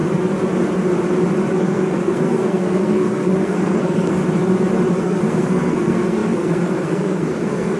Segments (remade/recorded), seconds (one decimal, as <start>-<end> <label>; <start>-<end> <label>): 0.0-1.5 recorded; 1.5-4.2 remade; 4.2-4.9 recorded; 4.9-7.8 remade